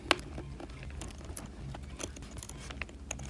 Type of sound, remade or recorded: recorded